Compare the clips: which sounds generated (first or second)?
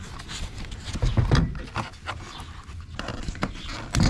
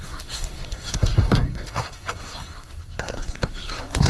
second